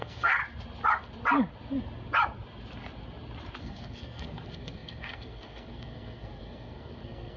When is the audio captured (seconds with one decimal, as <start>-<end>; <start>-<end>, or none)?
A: 0.4-3.6